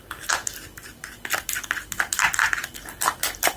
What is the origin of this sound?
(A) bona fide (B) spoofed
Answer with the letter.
A